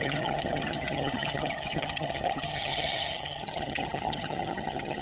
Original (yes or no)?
no